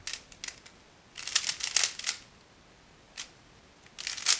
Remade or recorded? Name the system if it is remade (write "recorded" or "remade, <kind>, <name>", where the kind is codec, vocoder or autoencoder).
recorded